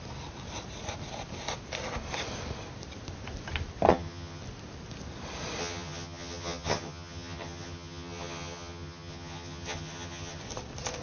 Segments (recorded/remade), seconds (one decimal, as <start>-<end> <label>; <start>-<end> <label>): 0.0-3.9 recorded; 3.9-4.4 remade; 4.4-5.6 recorded; 5.6-10.4 remade; 10.4-11.0 recorded